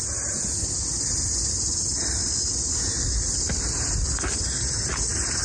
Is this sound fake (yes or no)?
no